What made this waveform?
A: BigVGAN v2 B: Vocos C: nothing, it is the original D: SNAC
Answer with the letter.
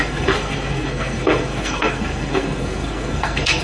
D